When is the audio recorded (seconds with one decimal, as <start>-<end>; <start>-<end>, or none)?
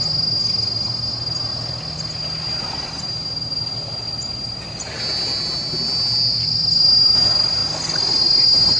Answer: 0.0-8.8